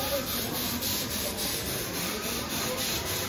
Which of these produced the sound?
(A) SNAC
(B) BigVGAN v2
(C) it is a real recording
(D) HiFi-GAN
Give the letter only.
B